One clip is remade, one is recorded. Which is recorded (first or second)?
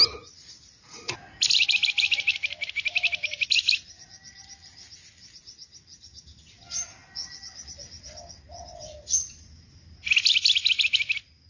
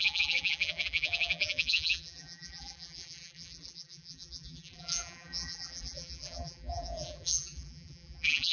first